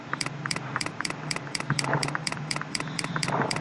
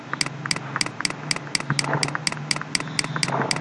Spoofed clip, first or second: first